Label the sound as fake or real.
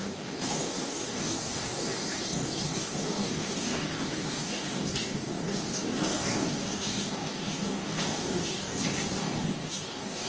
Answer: fake